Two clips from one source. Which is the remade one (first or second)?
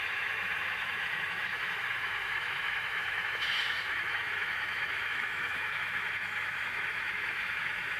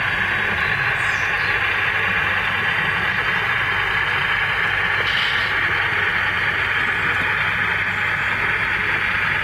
first